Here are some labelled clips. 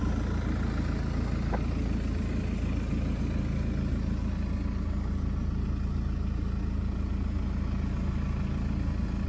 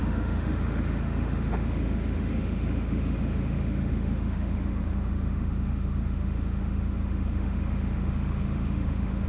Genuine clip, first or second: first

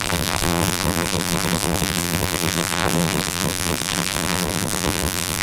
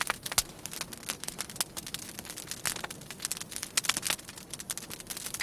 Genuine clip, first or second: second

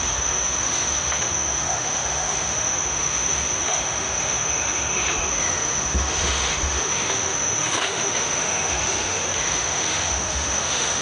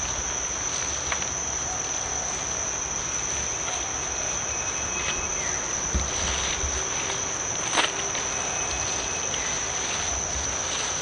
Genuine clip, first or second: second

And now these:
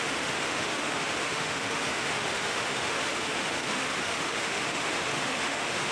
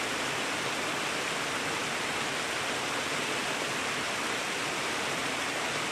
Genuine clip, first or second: second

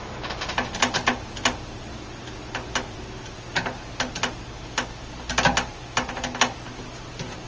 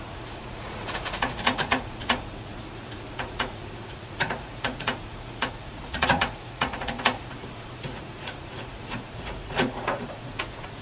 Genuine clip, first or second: first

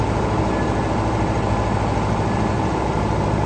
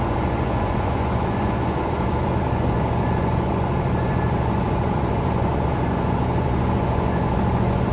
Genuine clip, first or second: first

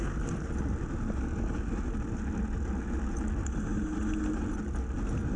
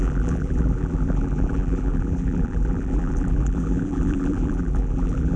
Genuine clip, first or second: first